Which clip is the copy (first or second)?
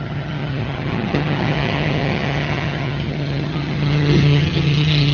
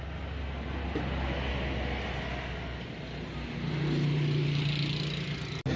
first